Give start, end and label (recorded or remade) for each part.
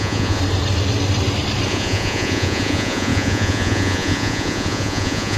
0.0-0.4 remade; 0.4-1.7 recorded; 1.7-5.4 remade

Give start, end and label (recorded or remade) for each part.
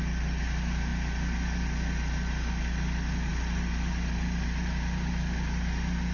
0.0-6.1 recorded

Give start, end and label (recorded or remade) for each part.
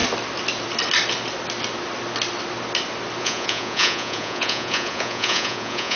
0.0-3.2 recorded; 3.2-6.0 remade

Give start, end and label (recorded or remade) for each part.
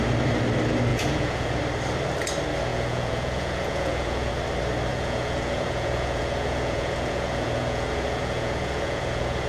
0.0-0.9 recorded; 0.9-1.6 remade; 1.6-2.7 recorded; 2.7-4.3 remade; 4.3-4.9 recorded; 4.9-9.5 remade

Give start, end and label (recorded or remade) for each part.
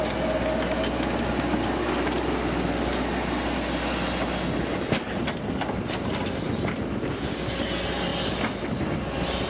0.0-9.5 recorded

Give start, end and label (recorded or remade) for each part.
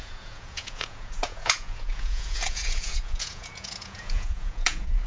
0.0-5.1 remade